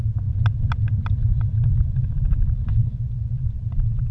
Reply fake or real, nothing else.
real